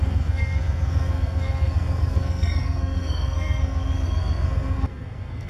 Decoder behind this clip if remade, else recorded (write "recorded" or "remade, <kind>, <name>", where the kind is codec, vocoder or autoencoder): remade, codec, SNAC